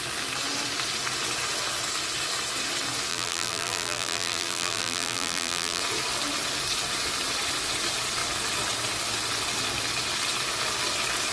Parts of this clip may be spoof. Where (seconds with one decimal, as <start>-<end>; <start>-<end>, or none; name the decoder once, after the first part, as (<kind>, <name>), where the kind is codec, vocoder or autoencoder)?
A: 3.1-5.8 (vocoder, BigVGAN v2)